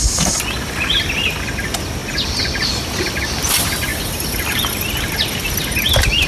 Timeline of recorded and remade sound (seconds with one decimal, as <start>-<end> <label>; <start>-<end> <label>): 0.0-2.0 remade; 2.0-2.8 recorded; 2.8-6.3 remade